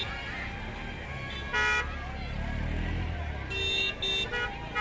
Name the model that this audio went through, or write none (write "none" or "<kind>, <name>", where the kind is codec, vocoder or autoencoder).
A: none